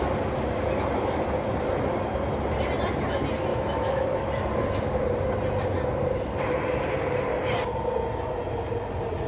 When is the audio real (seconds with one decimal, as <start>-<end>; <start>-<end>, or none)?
0.0-3.5; 4.3-9.3